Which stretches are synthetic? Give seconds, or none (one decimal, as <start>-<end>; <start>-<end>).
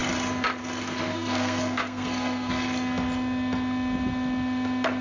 1.1-2.5